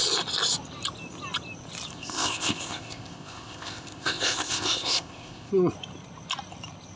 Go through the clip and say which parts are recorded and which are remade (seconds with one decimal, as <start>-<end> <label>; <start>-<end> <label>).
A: 0.0-1.9 recorded; 1.9-5.5 remade; 5.5-7.0 recorded